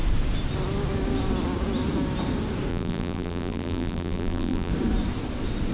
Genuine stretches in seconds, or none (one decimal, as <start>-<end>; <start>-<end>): 0.0-2.7; 4.7-5.7